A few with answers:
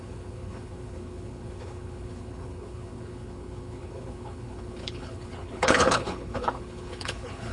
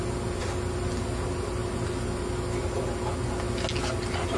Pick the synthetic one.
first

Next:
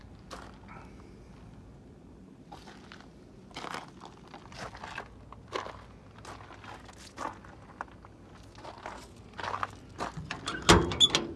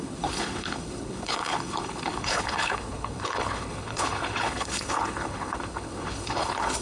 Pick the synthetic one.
second